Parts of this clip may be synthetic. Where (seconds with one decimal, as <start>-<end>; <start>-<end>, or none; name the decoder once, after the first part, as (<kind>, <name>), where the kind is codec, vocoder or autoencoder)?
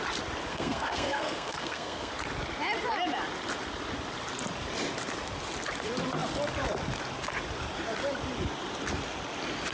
0.5-2.1 (codec, SNAC)